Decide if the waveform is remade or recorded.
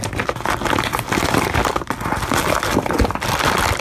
recorded